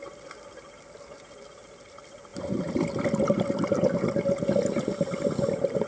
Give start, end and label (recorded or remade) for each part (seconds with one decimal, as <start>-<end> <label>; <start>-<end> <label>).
0.0-5.9 recorded